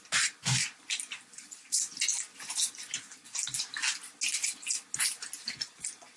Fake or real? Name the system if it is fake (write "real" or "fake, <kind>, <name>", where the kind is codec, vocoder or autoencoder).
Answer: real